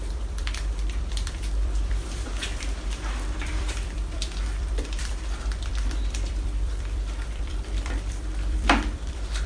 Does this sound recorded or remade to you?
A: remade